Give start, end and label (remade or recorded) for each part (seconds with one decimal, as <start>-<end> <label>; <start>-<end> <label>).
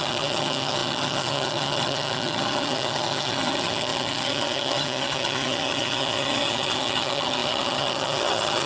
0.0-8.7 remade